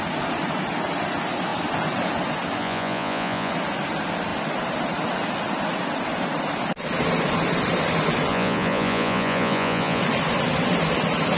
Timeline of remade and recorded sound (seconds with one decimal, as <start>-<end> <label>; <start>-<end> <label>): 0.0-2.6 recorded; 2.6-3.5 remade; 3.5-8.3 recorded; 8.3-10.0 remade; 10.0-11.4 recorded

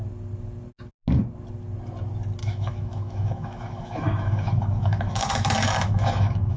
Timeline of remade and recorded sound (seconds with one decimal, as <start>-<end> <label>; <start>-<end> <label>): 0.0-2.4 recorded; 2.4-6.6 remade

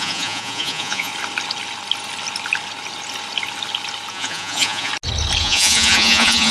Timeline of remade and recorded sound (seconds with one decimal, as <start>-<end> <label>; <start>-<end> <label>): 0.0-1.1 remade; 1.1-4.1 recorded; 4.1-4.9 remade; 4.9-5.4 recorded; 5.4-6.5 remade